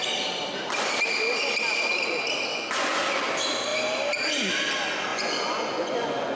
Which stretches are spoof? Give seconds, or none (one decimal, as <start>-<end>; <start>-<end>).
2.5-3.2; 5.1-6.3